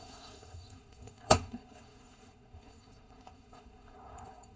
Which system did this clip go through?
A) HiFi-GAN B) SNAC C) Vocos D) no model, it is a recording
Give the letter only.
B